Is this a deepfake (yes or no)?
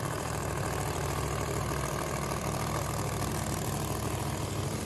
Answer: yes